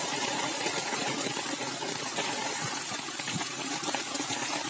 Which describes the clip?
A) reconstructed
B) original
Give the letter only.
A